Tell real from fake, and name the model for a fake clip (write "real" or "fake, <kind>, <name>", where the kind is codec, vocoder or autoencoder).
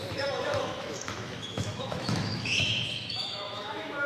fake, autoencoder, DAC-VAE